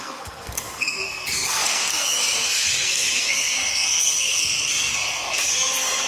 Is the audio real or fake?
fake